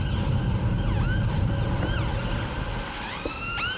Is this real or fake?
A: real